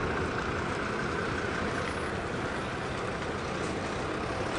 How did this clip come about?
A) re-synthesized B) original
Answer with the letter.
B